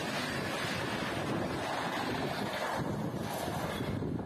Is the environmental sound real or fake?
real